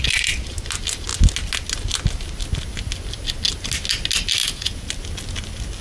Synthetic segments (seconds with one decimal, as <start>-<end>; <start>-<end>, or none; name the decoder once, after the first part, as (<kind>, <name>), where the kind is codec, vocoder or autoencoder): 4.4-4.9 (vocoder, Vocos)